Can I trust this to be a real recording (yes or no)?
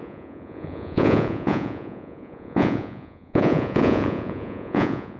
no